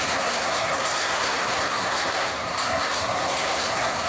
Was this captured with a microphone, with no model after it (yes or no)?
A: no